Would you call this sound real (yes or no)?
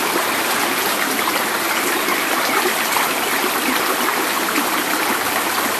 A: yes